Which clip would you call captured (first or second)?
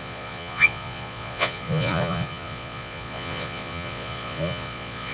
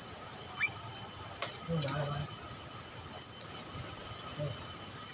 second